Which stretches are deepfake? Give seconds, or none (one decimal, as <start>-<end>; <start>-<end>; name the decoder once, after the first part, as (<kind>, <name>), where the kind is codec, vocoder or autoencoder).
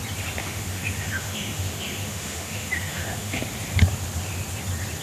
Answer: 0.4-3.4 (autoencoder, DAC-VAE)